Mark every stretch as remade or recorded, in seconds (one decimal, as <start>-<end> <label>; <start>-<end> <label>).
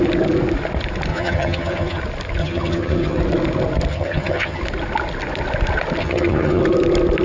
0.0-1.1 recorded; 1.1-2.0 remade; 2.0-2.4 recorded; 2.4-3.2 remade; 3.2-3.9 recorded; 3.9-4.6 remade; 4.6-6.0 recorded; 6.0-6.6 remade; 6.6-7.2 recorded